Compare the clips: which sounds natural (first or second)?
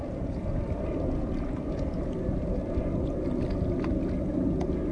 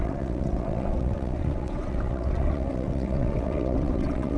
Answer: first